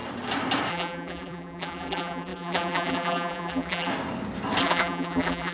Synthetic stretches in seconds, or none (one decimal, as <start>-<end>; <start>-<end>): 0.7-3.9; 4.6-5.5